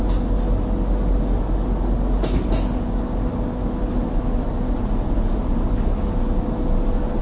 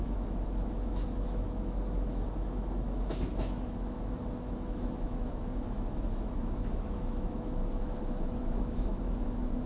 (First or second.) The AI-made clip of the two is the second